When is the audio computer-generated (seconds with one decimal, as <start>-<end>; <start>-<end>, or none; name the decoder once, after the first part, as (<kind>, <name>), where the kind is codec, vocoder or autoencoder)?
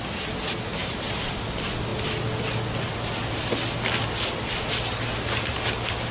0.8-1.4 (vocoder, BigVGAN v2)